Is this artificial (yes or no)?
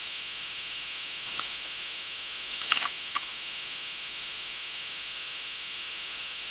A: yes